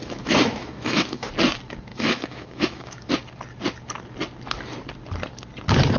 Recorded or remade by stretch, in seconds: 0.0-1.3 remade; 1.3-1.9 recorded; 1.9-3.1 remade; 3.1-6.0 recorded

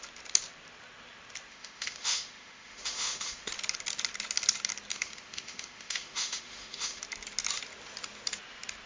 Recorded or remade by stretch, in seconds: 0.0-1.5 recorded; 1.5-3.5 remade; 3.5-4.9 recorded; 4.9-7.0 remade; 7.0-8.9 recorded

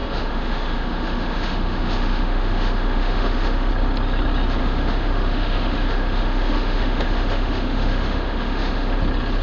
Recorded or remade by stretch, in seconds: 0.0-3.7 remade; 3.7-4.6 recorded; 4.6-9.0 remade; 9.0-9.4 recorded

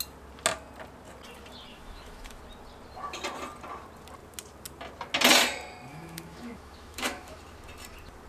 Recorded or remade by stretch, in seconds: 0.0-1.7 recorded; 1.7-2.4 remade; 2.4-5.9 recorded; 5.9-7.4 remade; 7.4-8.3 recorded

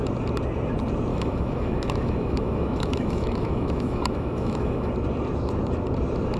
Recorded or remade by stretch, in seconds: 0.0-1.1 recorded; 1.1-4.9 remade; 4.9-6.4 recorded

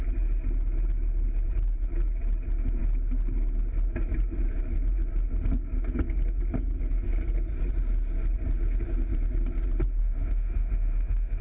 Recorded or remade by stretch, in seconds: 0.0-10.0 recorded; 10.0-11.4 remade